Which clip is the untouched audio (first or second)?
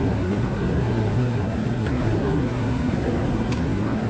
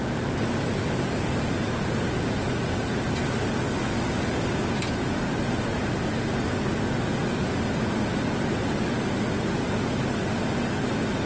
second